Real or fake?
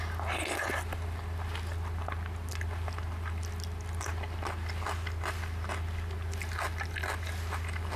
real